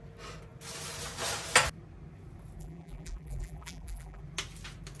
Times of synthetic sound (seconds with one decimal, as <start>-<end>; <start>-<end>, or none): 2.6-4.2

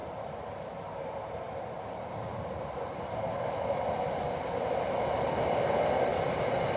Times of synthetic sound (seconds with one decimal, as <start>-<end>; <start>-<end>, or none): 0.0-3.7

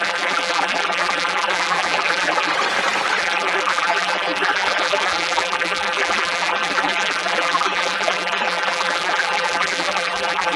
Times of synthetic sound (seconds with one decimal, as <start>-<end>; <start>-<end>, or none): 0.0-2.5; 3.2-10.6

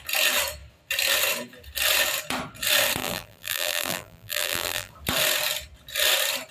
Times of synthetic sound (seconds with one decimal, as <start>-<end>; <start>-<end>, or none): 3.0-4.9

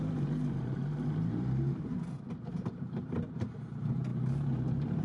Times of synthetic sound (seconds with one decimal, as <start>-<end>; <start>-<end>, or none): 0.0-4.1

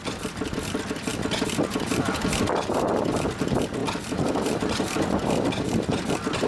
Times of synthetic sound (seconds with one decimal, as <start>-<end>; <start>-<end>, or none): 1.1-2.2; 3.8-5.5

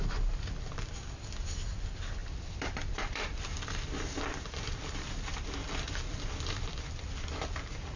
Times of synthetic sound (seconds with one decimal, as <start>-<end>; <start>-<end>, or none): 2.2-7.0